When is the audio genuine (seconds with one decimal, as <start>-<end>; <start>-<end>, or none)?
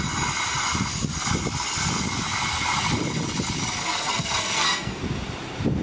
0.0-3.8; 5.0-5.8